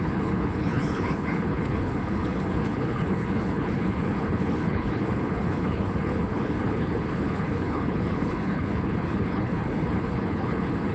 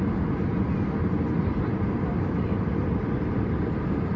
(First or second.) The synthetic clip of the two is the first